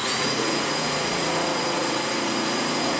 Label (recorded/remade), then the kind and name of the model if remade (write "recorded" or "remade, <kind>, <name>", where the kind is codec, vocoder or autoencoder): remade, vocoder, Vocos